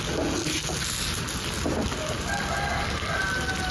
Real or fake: real